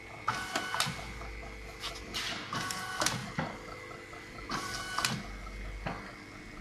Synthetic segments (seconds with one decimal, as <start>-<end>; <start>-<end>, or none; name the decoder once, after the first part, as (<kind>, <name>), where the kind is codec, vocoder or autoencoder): none